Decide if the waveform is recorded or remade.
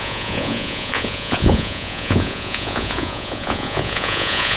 remade